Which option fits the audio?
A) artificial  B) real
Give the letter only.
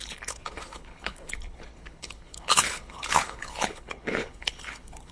A